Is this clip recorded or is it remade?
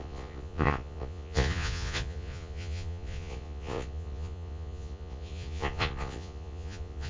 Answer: remade